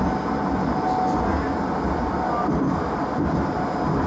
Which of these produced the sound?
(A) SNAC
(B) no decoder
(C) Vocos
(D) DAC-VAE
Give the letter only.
B